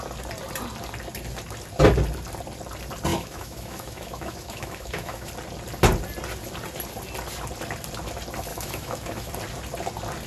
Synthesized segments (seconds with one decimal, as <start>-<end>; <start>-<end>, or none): 3.1-5.3; 8.5-9.3